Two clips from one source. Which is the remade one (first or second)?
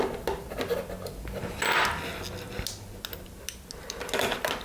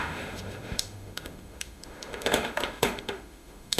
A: second